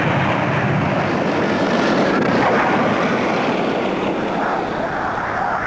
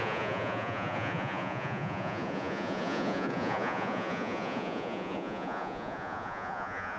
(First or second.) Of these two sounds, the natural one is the first